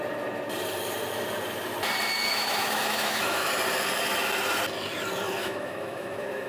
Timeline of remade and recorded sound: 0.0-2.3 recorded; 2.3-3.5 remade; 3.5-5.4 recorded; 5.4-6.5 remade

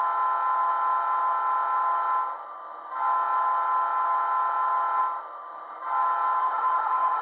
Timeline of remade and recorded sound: 0.0-6.4 recorded; 6.4-7.2 remade

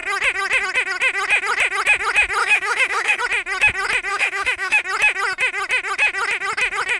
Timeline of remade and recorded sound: 0.0-2.4 recorded; 2.4-3.2 remade; 3.2-4.1 recorded; 4.1-4.8 remade; 4.8-7.0 recorded

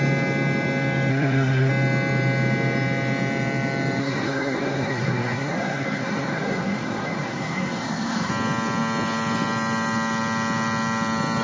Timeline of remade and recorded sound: 0.0-1.1 recorded; 1.1-1.7 remade; 1.7-4.0 recorded; 4.0-8.3 remade; 8.3-11.4 recorded